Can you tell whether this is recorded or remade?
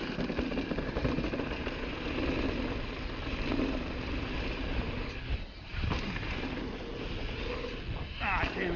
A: recorded